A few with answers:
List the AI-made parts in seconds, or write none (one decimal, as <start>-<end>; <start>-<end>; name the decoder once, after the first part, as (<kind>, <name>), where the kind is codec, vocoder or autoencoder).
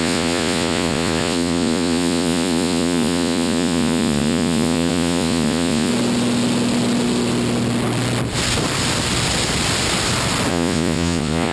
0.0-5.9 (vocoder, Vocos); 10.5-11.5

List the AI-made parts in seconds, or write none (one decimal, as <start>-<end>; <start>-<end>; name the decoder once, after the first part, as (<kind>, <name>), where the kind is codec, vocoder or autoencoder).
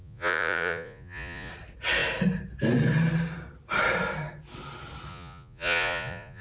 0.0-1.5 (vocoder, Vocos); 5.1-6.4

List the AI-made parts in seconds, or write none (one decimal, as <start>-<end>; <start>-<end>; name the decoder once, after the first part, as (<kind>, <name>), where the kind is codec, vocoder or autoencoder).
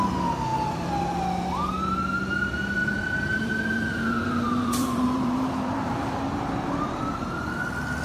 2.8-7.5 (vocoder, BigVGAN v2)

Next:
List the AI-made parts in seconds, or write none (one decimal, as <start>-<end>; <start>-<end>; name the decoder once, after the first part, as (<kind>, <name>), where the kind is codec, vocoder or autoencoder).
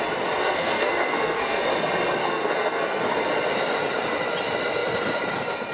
0.4-1.6 (codec, SNAC); 2.2-3.0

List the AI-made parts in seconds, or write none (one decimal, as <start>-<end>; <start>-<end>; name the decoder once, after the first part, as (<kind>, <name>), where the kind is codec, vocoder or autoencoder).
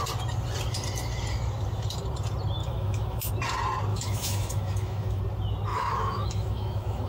2.6-3.3 (autoencoder, DAC-VAE); 3.9-5.2; 5.7-7.1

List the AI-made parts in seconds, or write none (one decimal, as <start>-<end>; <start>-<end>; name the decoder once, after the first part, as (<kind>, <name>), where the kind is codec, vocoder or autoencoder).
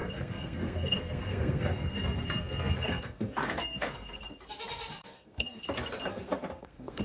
0.0-4.2 (codec, SNAC); 5.0-5.6; 6.1-7.0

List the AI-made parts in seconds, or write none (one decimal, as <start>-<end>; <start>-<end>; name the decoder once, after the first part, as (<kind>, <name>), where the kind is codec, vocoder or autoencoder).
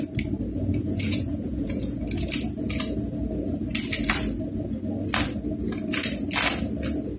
0.7-2.0 (vocoder, Vocos)